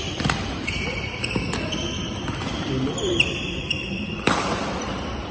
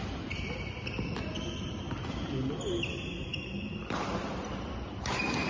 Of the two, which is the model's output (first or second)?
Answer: first